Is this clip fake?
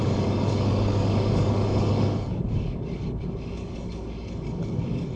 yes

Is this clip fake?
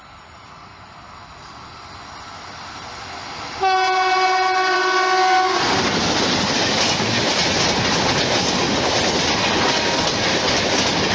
no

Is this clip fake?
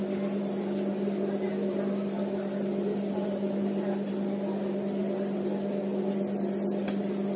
no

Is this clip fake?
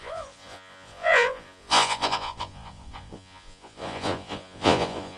yes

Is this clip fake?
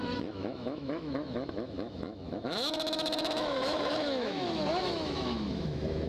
yes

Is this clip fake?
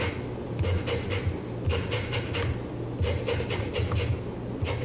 no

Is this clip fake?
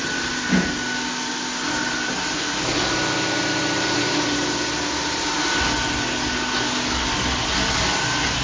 no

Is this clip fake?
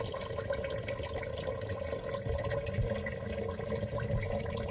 no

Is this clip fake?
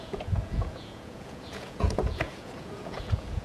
yes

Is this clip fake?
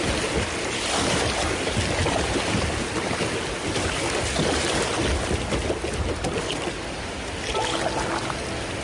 no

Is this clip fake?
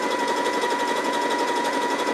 yes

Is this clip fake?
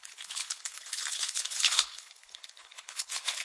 yes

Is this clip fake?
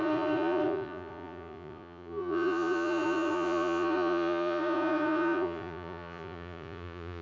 yes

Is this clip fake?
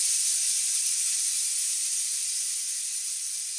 no